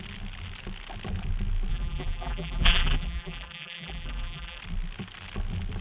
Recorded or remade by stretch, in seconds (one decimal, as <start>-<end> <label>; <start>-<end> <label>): 0.0-1.7 recorded; 1.7-4.6 remade; 4.6-5.8 recorded